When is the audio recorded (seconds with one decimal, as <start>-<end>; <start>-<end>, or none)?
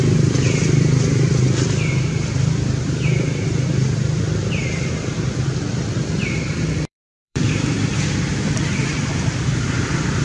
none